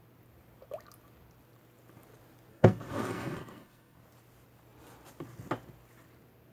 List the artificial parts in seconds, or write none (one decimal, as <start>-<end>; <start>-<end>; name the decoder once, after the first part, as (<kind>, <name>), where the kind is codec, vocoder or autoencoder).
2.5-4.0 (codec, SNAC)